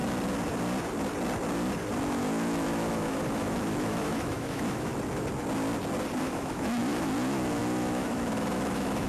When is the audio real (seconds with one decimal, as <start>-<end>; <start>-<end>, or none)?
0.0-2.0; 4.9-6.2